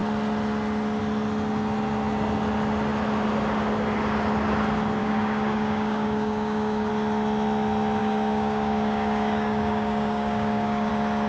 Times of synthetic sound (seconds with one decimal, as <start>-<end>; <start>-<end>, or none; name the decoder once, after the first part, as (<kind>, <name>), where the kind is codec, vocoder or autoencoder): 5.0-6.9 (codec, DAC); 8.0-10.9